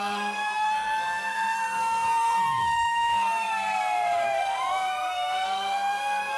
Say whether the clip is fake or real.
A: fake